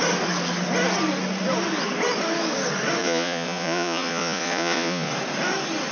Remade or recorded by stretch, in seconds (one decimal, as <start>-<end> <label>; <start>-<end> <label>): 0.0-3.0 recorded; 3.0-5.1 remade; 5.1-5.9 recorded